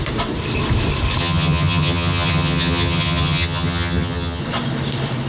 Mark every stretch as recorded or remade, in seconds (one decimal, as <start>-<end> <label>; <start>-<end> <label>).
0.0-1.2 recorded; 1.2-4.4 remade; 4.4-5.3 recorded

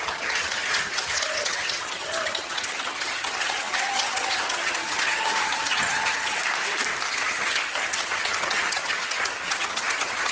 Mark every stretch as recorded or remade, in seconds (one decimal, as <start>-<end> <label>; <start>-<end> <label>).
0.0-6.4 remade; 6.4-7.1 recorded; 7.1-10.3 remade